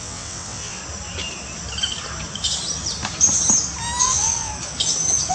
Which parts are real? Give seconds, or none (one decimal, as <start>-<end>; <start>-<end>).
0.8-4.0; 4.5-5.3